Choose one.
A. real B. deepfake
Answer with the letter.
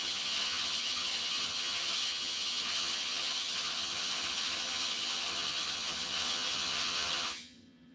B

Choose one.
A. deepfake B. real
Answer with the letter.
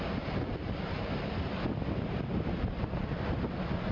B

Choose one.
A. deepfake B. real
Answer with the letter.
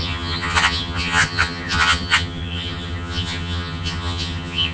A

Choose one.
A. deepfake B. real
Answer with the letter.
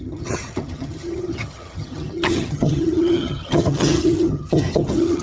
A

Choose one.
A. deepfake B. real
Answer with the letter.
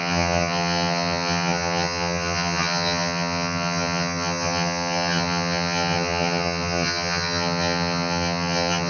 A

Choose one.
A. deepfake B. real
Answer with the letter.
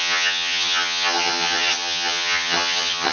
A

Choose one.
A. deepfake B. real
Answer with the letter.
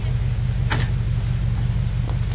B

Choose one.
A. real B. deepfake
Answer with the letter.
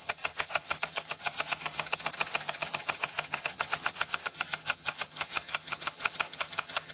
B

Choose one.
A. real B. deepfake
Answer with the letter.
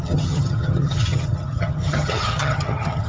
B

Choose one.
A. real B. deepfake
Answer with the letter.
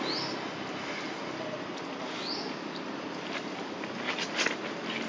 A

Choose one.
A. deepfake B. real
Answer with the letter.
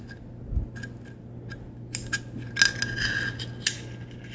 B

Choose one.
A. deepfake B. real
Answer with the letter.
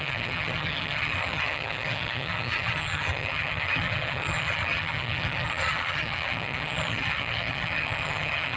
A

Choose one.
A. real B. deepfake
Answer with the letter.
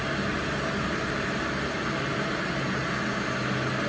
A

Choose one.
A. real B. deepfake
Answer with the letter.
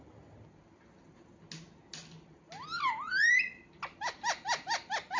A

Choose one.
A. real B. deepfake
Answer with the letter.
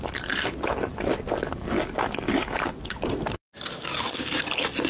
A